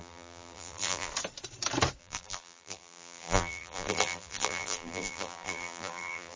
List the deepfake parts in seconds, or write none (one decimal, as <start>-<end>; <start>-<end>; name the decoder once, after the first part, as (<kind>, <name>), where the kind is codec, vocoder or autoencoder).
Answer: 0.0-1.1 (vocoder, BigVGAN v2); 2.0-6.4